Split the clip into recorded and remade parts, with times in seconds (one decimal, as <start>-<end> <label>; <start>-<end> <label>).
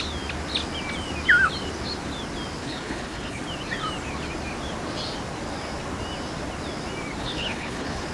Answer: 0.0-2.6 recorded; 2.6-3.4 remade; 3.4-7.2 recorded; 7.2-8.1 remade